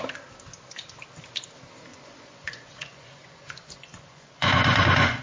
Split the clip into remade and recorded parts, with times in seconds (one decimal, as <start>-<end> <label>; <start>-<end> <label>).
0.0-1.9 recorded; 1.9-5.2 remade